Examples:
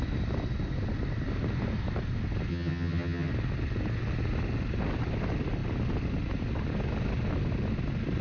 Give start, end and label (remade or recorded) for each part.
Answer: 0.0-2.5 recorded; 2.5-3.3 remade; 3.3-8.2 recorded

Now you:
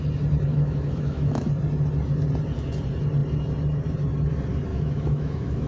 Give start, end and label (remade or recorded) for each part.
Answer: 0.0-0.5 recorded; 0.5-1.5 remade; 1.5-4.7 recorded; 4.7-5.7 remade

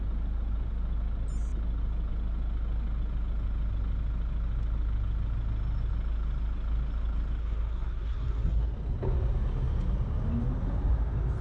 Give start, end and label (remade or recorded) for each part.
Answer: 0.0-7.4 recorded; 7.4-8.7 remade; 8.7-11.4 recorded